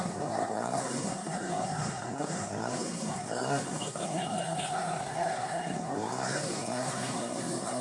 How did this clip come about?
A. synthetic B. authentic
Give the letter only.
A